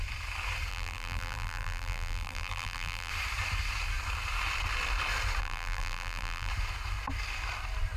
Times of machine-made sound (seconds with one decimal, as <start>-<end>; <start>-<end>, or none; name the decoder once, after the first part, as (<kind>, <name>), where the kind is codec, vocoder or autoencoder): 0.7-3.1 (vocoder, BigVGAN v2); 5.4-6.5